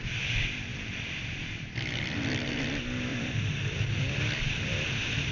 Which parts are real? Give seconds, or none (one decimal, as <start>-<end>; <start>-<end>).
0.0-0.7; 2.4-3.1

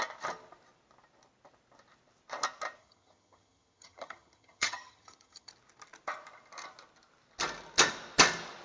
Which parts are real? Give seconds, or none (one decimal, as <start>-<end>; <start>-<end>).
0.0-2.8; 5.5-8.6

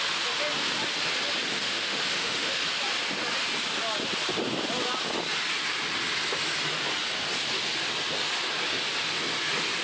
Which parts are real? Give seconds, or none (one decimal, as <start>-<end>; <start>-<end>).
0.0-1.5; 2.6-9.8